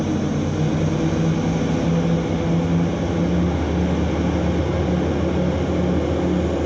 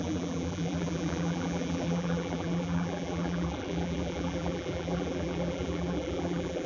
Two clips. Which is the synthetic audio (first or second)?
second